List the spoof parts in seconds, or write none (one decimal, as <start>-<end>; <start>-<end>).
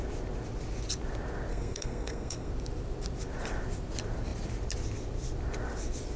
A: 1.5-2.5